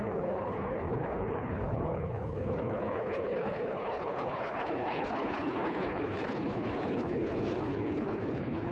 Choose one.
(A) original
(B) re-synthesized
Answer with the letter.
B